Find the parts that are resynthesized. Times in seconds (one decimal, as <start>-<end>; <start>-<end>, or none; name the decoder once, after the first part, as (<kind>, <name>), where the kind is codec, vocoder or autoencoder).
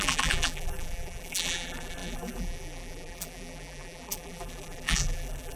0.0-5.6 (vocoder, BigVGAN v2)